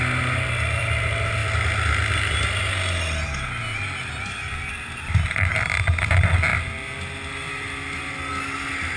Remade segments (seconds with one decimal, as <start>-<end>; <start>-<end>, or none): none